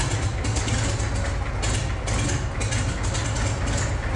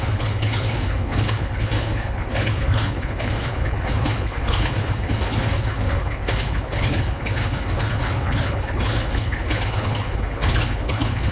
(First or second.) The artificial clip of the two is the second